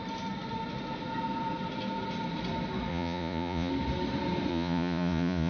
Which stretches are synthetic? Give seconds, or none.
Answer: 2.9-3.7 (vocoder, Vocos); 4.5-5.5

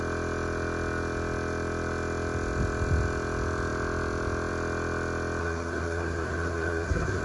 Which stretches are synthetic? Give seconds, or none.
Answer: 5.4-7.2 (codec, SNAC)

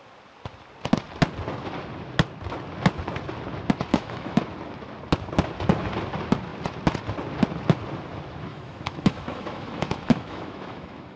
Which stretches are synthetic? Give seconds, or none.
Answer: 3.9-4.4 (autoencoder, DAC-VAE); 8.5-11.2

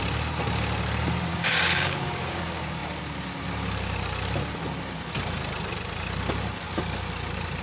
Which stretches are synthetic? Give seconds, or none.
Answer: 1.3-2.4 (codec, DAC)